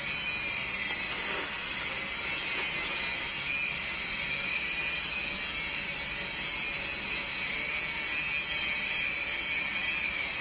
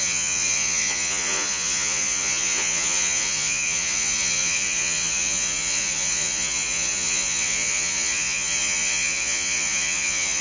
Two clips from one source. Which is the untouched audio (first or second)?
first